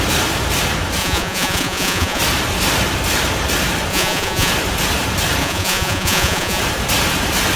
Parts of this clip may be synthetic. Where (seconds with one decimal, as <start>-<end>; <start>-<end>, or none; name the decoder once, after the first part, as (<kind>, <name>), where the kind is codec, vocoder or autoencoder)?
1.0-2.2 (vocoder, Vocos); 3.9-4.5; 5.4-6.6